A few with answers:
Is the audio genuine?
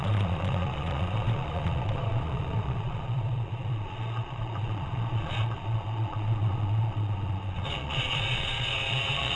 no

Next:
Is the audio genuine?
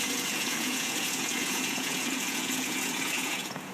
no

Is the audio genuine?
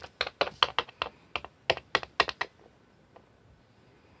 yes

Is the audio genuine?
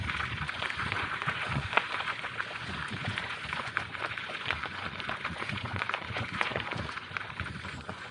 no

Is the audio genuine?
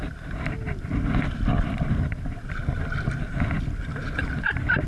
yes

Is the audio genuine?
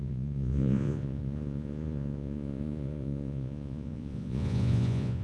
no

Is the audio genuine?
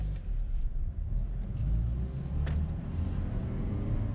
yes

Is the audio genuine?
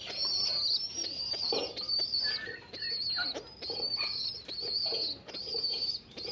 yes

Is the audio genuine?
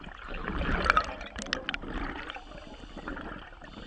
yes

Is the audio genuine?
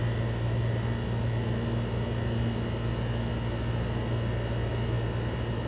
yes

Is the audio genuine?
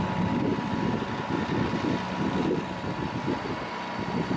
yes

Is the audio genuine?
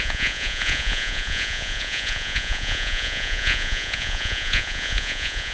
no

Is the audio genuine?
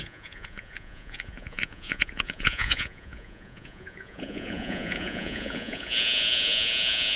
no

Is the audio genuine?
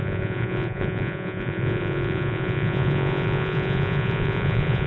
no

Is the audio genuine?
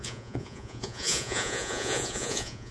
no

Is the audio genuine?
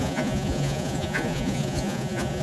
no